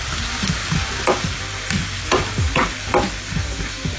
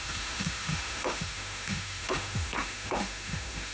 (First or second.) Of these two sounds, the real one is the first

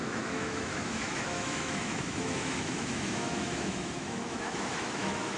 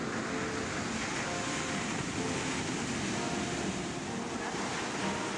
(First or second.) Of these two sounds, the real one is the second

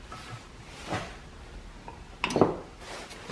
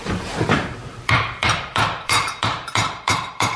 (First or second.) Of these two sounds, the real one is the first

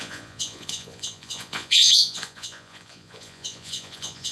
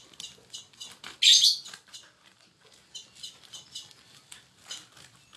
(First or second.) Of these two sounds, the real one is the second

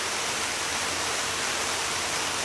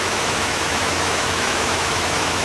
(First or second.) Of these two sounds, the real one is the first